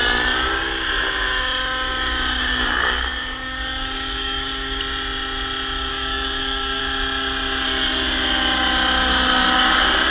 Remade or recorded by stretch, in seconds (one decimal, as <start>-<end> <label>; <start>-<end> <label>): 0.0-2.5 recorded; 2.5-4.8 remade; 4.8-5.9 recorded; 5.9-6.8 remade; 6.8-10.1 recorded